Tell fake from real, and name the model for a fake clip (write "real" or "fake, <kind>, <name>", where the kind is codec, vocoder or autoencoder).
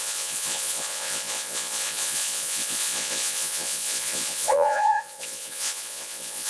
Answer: fake, vocoder, Vocos